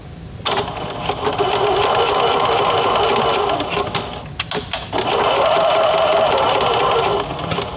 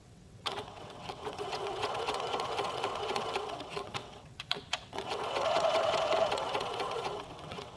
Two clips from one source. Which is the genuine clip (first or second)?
first